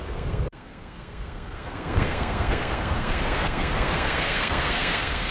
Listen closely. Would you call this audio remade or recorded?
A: remade